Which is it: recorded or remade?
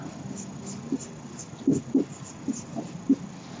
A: recorded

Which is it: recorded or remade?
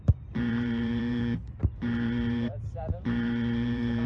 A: remade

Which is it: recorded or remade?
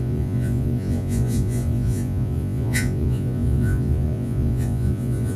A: remade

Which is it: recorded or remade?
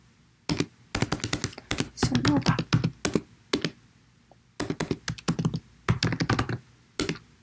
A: recorded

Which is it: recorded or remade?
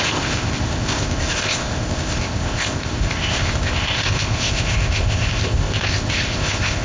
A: remade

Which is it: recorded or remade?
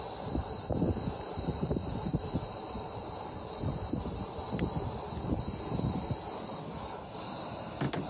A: recorded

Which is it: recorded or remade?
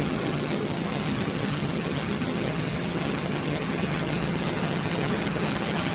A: remade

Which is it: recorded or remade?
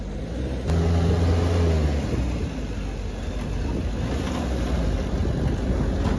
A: recorded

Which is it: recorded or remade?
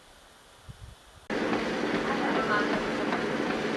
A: recorded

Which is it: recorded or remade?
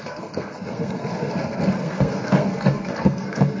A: remade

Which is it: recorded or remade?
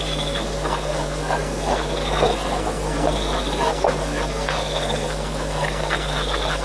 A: remade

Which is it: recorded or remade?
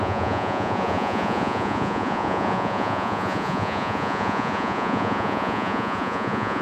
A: remade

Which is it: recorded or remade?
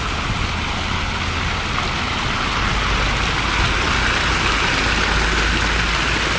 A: recorded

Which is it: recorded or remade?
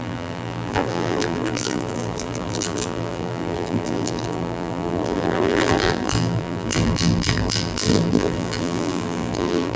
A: remade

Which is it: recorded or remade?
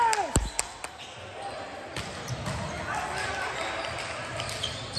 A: recorded